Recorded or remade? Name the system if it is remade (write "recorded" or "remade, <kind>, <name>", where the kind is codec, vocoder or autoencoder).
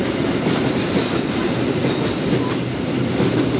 recorded